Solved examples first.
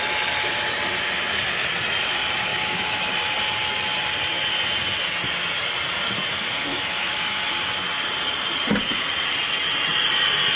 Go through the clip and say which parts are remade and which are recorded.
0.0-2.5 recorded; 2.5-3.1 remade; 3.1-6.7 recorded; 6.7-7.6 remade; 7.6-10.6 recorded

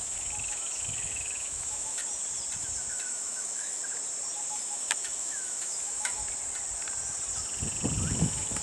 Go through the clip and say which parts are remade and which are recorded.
0.0-2.0 remade; 2.0-2.9 recorded; 2.9-3.8 remade; 3.8-4.5 recorded; 4.5-6.2 remade; 6.2-8.1 recorded; 8.1-8.6 remade

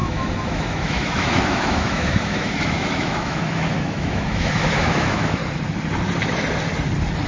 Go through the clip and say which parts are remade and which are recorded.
0.0-5.4 remade; 5.4-7.3 recorded

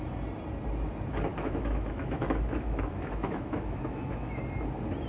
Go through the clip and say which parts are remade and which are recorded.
0.0-1.3 recorded; 1.3-4.4 remade; 4.4-5.1 recorded

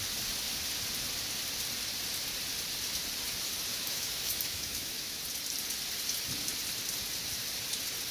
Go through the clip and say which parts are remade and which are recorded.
0.0-3.7 recorded; 3.7-5.2 remade; 5.2-8.1 recorded